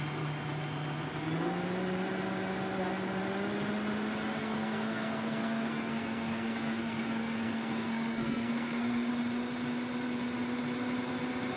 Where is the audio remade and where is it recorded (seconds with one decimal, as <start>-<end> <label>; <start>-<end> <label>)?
0.0-4.4 recorded; 4.4-9.1 remade; 9.1-11.6 recorded